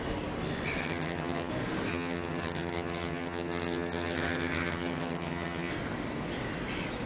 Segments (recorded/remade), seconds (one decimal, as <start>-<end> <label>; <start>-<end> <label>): 0.0-0.8 recorded; 0.8-1.5 remade; 1.5-1.9 recorded; 1.9-5.7 remade; 5.7-7.1 recorded